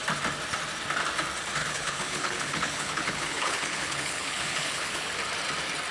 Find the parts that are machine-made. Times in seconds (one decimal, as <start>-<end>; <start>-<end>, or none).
1.6-5.1